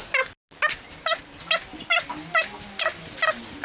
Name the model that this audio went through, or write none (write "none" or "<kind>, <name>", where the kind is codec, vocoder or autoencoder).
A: none